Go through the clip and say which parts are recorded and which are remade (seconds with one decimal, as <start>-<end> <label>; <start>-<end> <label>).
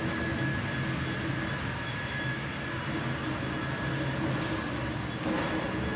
0.0-0.5 remade; 0.5-1.5 recorded; 1.5-2.5 remade; 2.5-6.0 recorded